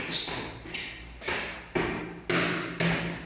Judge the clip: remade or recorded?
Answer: recorded